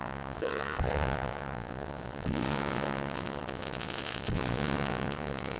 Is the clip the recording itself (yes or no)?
no